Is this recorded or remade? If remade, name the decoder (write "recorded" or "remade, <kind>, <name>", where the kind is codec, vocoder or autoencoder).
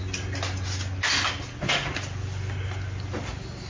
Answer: recorded